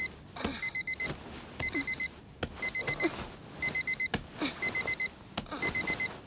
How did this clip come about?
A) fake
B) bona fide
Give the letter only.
B